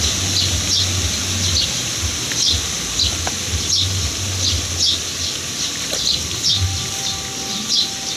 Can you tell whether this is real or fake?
real